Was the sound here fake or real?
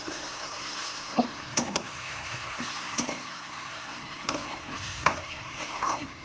fake